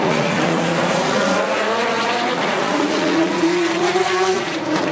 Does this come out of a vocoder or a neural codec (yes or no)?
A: yes